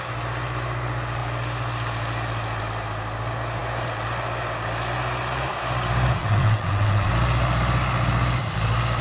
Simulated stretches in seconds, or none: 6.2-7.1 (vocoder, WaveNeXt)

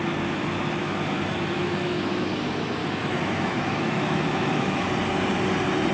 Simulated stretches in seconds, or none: 0.8-2.3 (autoencoder, DAC-VAE); 2.8-4.9

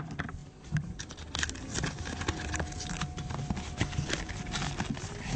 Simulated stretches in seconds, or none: none

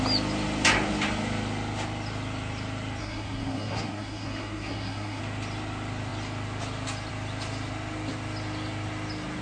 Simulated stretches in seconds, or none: 3.0-5.2 (codec, SNAC)